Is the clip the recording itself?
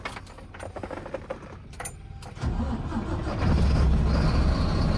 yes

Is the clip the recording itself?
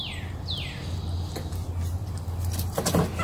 yes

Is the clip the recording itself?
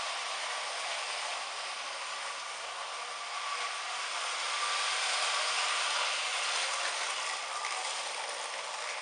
yes